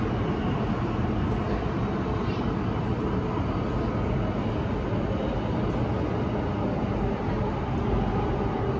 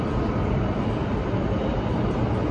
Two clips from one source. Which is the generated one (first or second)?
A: second